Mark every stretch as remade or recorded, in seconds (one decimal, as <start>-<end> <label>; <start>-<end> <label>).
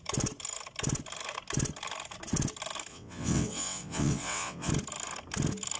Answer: 0.0-2.9 recorded; 2.9-4.7 remade; 4.7-5.8 recorded